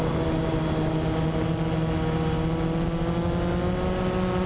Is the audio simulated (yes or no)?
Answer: no